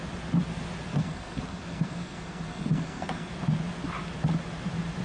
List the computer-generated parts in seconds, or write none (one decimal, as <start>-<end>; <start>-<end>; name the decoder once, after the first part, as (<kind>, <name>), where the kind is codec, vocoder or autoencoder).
0.9-3.3 (codec, SNAC)